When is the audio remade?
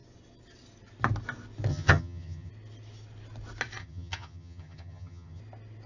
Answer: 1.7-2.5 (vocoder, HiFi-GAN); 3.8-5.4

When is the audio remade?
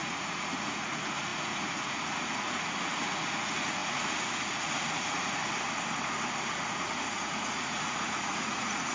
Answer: 0.0-5.4 (vocoder, Vocos); 6.5-8.9